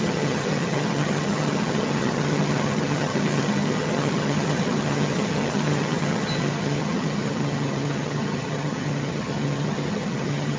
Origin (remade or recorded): remade